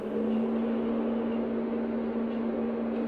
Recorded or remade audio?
recorded